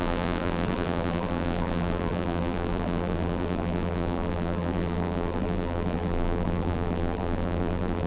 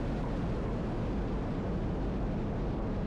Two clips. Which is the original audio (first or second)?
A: second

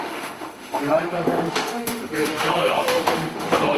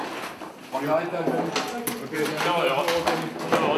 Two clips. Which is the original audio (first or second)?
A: second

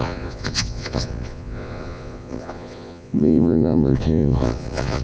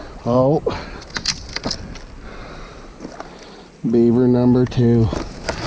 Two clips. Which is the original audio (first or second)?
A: second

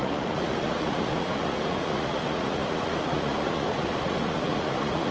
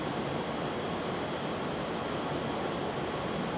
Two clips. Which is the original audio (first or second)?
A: second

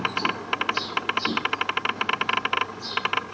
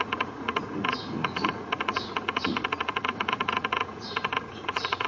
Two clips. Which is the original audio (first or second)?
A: first